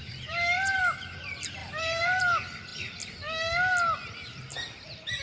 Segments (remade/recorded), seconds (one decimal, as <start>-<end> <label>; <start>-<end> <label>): 0.0-0.8 remade; 0.8-1.6 recorded; 1.6-2.2 remade; 2.2-5.2 recorded